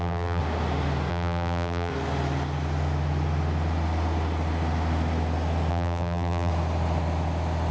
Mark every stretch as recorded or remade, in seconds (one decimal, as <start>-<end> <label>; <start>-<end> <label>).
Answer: 0.0-0.4 remade; 0.4-1.1 recorded; 1.1-1.9 remade; 1.9-5.7 recorded; 5.7-6.5 remade; 6.5-7.7 recorded

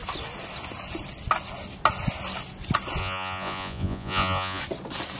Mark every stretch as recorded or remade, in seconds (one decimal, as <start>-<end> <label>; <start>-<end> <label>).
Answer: 0.0-3.0 recorded; 3.0-4.6 remade; 4.6-5.2 recorded

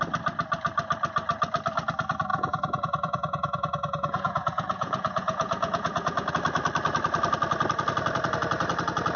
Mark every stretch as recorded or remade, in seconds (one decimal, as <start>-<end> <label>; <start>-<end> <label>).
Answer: 0.0-2.3 recorded; 2.3-6.3 remade; 6.3-9.2 recorded

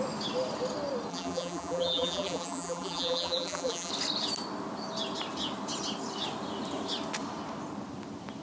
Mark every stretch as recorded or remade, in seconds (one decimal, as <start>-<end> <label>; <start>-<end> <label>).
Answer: 0.0-1.1 recorded; 1.1-3.9 remade; 3.9-8.4 recorded

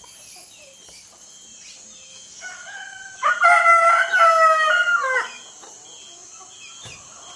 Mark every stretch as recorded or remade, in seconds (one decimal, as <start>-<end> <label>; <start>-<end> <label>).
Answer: 0.0-2.1 recorded; 2.1-3.3 remade; 3.3-7.4 recorded

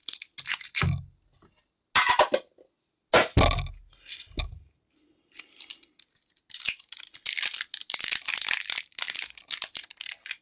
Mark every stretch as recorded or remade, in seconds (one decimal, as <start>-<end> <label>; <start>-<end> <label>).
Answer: 0.0-10.4 recorded